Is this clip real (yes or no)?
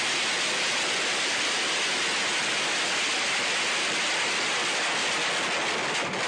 yes